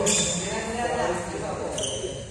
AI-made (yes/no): no